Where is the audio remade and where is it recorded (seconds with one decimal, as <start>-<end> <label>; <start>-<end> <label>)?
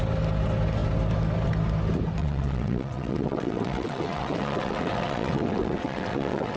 0.0-2.2 recorded; 2.2-6.6 remade